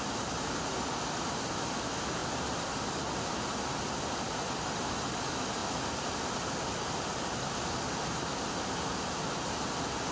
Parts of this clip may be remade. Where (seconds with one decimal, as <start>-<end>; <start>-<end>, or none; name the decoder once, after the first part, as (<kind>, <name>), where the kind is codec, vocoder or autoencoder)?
none